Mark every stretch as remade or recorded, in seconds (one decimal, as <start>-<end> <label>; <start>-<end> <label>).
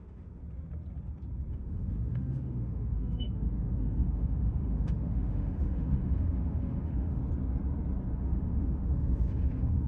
0.0-0.4 remade; 0.4-1.5 recorded; 1.5-7.2 remade; 7.2-8.2 recorded; 8.2-9.9 remade